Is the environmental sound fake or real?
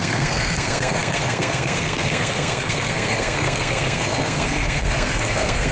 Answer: fake